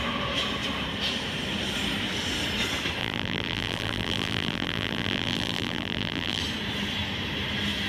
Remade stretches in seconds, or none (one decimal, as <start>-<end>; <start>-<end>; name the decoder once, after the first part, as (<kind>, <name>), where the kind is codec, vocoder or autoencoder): 3.0-6.4 (vocoder, BigVGAN v2)